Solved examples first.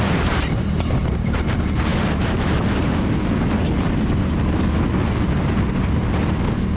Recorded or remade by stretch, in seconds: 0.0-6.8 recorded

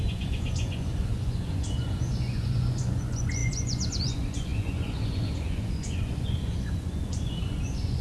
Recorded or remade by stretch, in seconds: 0.0-8.0 remade

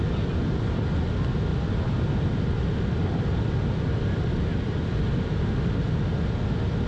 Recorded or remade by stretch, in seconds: 0.0-1.5 recorded; 1.5-5.6 remade; 5.6-6.9 recorded

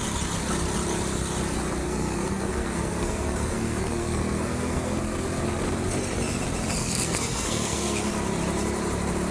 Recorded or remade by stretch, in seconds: 0.0-1.8 recorded; 1.8-5.0 remade; 5.0-6.8 recorded; 6.8-8.1 remade; 8.1-9.3 recorded

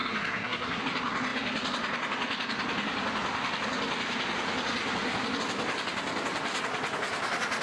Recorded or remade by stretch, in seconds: 0.0-0.8 remade; 0.8-7.6 recorded

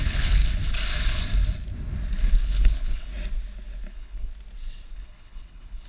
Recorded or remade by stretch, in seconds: 0.0-0.4 remade; 0.4-2.2 recorded; 2.2-3.1 remade; 3.1-3.9 recorded; 3.9-4.3 remade; 4.3-4.9 recorded; 4.9-5.9 remade

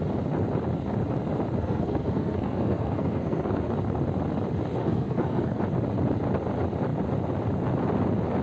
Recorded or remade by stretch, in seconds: 0.0-1.6 recorded; 1.6-3.7 remade; 3.7-4.8 recorded; 4.8-5.6 remade; 5.6-8.4 recorded

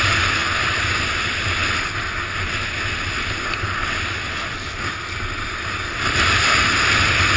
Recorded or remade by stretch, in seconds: 0.0-7.4 recorded